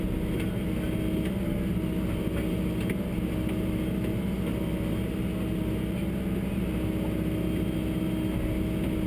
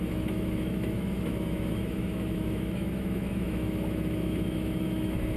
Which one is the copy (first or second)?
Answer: second